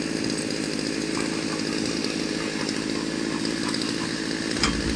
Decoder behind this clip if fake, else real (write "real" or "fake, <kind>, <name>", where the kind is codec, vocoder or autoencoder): real